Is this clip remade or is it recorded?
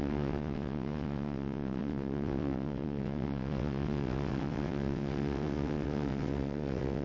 remade